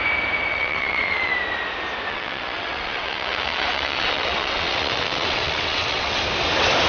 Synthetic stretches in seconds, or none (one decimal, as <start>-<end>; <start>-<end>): 0.5-1.3; 2.1-6.2